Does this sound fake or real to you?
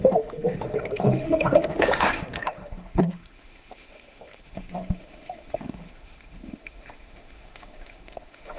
fake